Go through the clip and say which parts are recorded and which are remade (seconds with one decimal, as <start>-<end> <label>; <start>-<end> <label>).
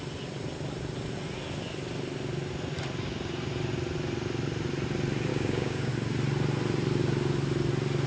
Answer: 0.0-5.3 recorded; 5.3-5.9 remade; 5.9-8.1 recorded